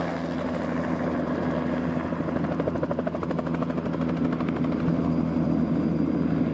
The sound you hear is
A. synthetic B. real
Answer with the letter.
B